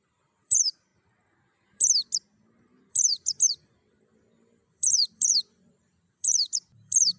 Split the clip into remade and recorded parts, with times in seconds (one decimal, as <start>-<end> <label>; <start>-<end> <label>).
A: 0.0-0.9 remade; 0.9-2.9 recorded; 2.9-7.2 remade